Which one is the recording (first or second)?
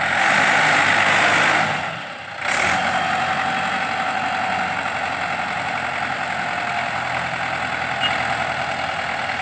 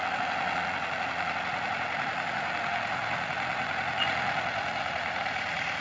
first